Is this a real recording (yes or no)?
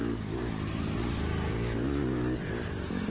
no